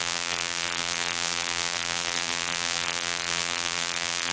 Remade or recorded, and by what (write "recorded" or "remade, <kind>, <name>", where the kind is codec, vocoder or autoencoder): remade, vocoder, BigVGAN v2